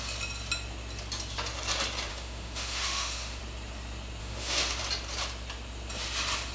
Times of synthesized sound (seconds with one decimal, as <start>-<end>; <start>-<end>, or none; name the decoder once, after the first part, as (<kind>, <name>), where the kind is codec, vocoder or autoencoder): 2.1-3.4 (autoencoder, DAC-VAE); 4.2-4.8